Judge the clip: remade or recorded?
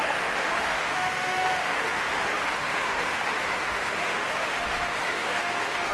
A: remade